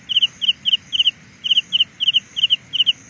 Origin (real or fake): real